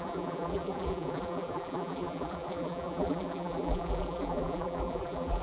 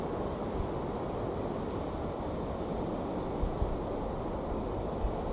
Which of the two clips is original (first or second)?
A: second